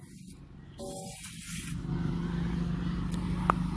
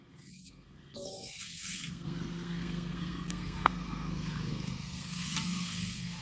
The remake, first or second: second